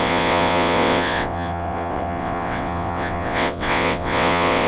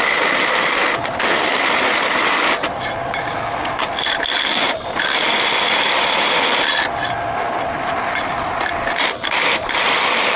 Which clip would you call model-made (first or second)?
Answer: first